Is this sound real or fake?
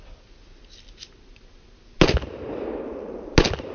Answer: real